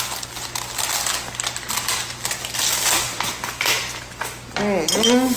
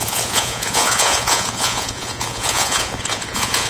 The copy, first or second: second